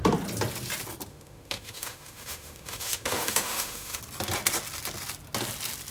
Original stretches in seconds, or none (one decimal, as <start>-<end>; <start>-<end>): 0.0-1.1; 4.0-5.9

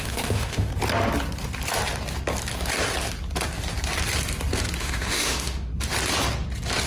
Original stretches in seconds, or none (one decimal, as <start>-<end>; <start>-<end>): 0.7-4.8; 5.7-6.9

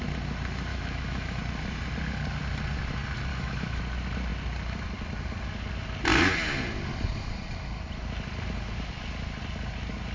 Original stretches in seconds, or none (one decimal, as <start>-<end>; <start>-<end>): 0.0-0.7; 1.4-3.3; 3.8-10.1

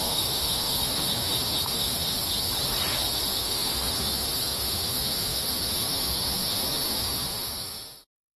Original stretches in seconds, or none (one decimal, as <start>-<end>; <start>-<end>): 2.1-3.3

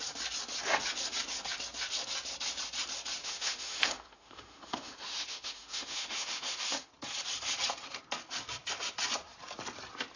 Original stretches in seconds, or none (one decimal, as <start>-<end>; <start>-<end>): 0.0-3.2; 6.9-10.2

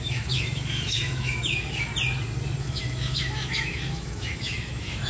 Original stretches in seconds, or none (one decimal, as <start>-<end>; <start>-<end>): 1.9-2.6